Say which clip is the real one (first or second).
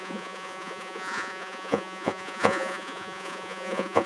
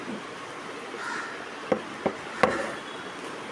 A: second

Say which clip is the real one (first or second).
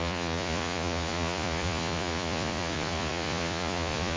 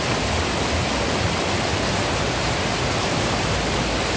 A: second